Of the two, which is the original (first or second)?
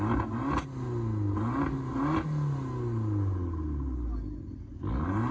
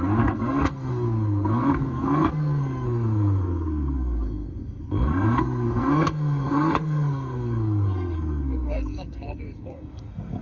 first